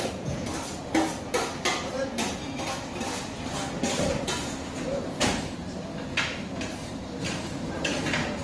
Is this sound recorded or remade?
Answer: recorded